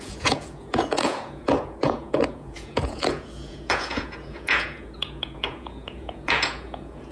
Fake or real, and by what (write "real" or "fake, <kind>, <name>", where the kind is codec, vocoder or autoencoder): fake, vocoder, Vocos